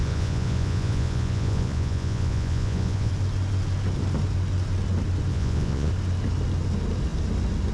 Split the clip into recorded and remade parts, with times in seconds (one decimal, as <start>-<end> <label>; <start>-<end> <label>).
0.0-3.1 remade; 3.1-5.3 recorded; 5.3-5.9 remade; 5.9-7.7 recorded